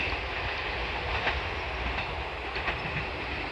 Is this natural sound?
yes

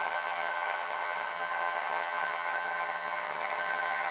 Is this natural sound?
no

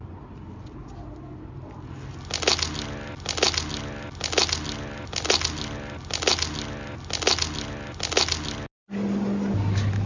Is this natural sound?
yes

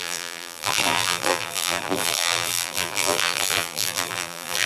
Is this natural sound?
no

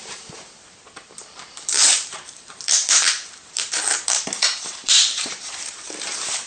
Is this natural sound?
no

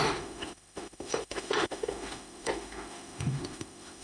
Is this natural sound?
no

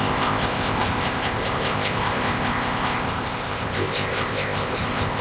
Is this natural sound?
no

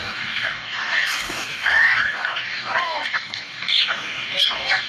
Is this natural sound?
no